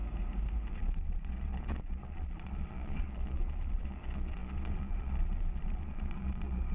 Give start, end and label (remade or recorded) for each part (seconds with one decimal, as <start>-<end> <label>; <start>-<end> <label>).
0.0-0.7 recorded; 0.7-6.7 remade